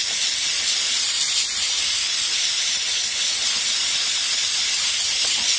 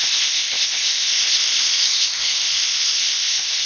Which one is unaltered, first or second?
first